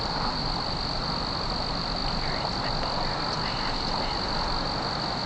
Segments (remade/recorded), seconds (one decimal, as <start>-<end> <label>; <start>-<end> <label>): 0.0-2.0 remade; 2.0-5.3 recorded